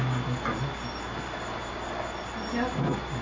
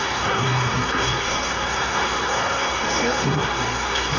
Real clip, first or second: first